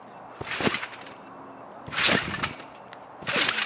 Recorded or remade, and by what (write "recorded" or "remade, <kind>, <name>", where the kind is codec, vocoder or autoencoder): recorded